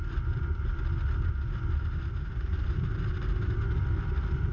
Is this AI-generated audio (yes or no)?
no